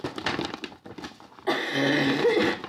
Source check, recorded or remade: recorded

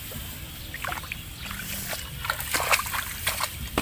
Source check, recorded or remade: recorded